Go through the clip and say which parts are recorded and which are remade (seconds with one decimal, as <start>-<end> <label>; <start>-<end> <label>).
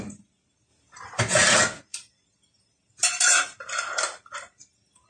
0.0-5.1 recorded